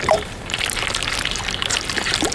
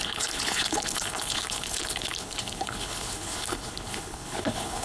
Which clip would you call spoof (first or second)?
second